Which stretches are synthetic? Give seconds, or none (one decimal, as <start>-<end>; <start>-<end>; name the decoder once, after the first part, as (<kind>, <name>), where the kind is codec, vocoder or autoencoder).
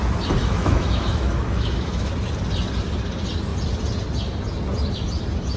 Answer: 0.4-2.1 (autoencoder, DAC-VAE)